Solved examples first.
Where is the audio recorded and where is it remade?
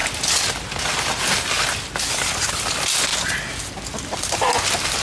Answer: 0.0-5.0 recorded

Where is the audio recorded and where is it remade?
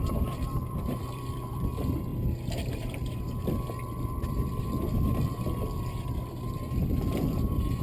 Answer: 0.0-2.1 remade; 2.1-2.8 recorded; 2.8-7.8 remade